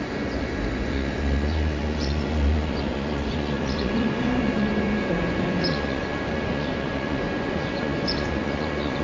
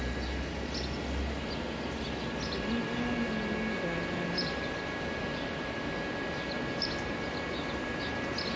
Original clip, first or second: second